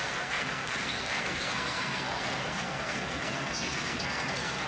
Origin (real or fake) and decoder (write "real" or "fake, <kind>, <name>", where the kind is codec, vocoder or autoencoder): fake, codec, SNAC